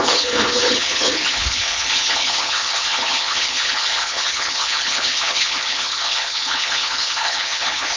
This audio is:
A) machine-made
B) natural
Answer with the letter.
A